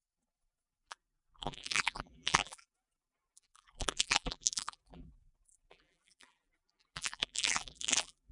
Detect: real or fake fake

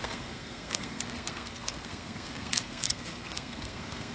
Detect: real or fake fake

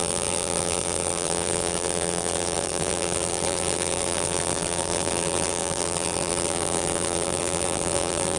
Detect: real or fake fake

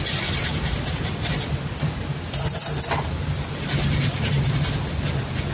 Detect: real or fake real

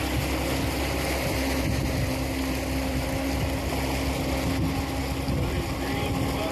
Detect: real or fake real